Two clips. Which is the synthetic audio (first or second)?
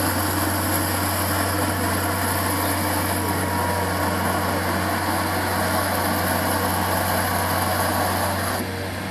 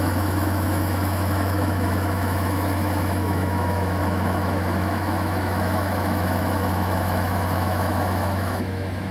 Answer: second